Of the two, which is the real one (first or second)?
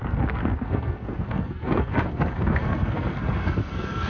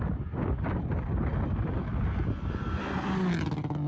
second